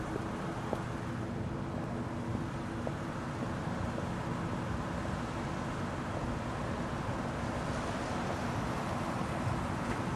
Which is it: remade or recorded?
recorded